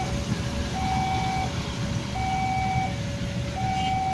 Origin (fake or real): real